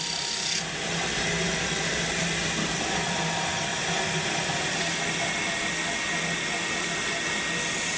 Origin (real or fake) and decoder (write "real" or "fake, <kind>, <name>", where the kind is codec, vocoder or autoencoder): real